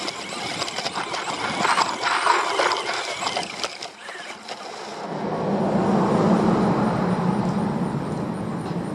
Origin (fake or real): real